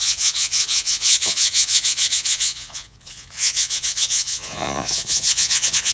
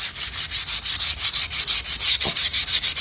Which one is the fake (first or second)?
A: first